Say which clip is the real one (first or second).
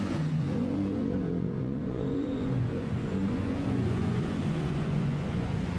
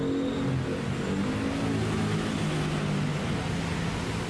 second